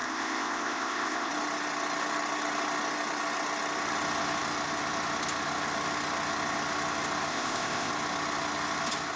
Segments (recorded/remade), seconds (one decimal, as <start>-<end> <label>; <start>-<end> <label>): 0.0-1.3 remade; 1.3-7.3 recorded; 7.3-7.9 remade; 7.9-9.2 recorded